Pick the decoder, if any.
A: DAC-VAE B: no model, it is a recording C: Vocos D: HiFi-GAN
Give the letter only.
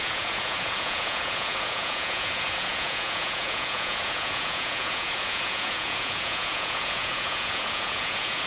C